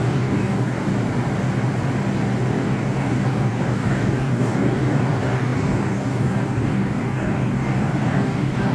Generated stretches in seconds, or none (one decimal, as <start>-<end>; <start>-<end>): 0.0-0.9; 2.5-8.7